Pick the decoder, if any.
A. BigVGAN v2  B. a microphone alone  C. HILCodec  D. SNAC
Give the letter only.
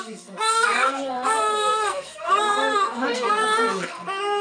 D